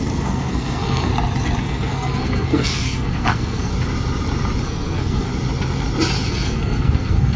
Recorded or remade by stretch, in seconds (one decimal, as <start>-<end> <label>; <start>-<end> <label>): 0.0-1.1 remade; 1.1-1.6 recorded; 1.6-3.7 remade; 3.7-4.6 recorded; 4.6-5.3 remade; 5.3-6.3 recorded; 6.3-7.4 remade